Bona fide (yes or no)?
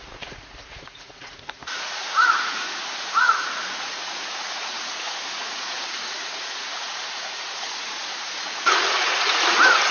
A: no